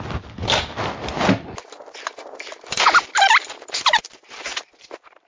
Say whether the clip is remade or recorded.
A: recorded